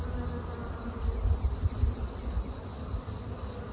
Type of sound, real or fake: real